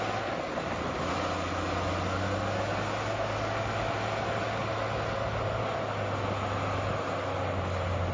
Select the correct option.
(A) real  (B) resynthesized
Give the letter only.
A